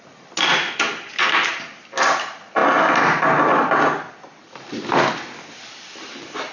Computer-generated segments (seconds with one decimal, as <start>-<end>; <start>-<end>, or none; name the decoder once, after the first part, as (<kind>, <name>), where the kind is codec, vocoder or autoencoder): none